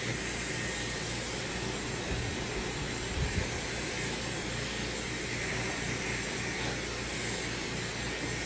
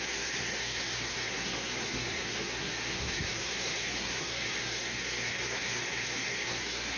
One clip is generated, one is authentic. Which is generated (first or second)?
second